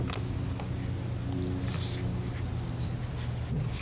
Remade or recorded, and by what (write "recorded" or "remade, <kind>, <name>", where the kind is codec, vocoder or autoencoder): recorded